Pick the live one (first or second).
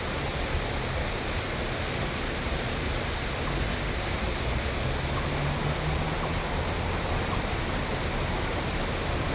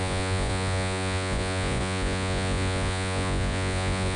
first